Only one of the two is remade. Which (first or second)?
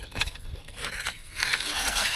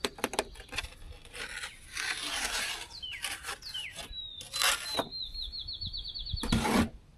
first